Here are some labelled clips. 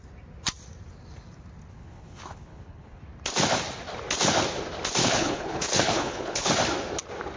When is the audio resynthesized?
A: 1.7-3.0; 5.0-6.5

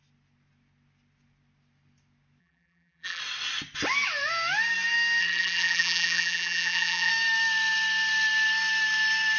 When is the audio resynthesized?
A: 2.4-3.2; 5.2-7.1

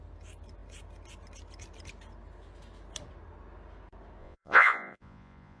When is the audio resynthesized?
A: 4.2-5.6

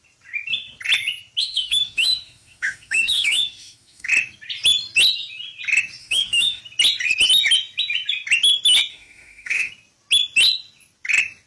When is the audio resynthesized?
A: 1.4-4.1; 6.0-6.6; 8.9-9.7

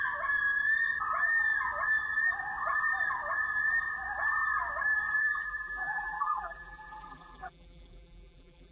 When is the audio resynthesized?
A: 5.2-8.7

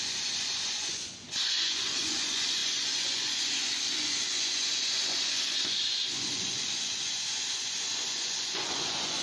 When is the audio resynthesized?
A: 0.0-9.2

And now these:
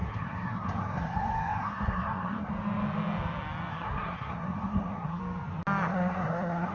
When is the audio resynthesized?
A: 0.0-2.5; 3.7-5.2; 5.9-6.7

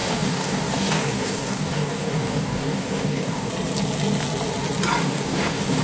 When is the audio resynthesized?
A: 0.0-3.5; 5.0-5.8